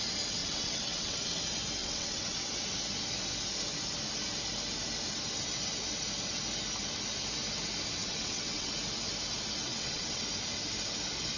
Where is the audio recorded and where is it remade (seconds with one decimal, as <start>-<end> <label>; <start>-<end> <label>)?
0.0-0.4 recorded; 0.4-1.4 remade; 1.4-1.8 recorded; 1.8-2.5 remade; 2.5-8.0 recorded; 8.0-8.7 remade; 8.7-9.7 recorded; 9.7-10.2 remade; 10.2-11.4 recorded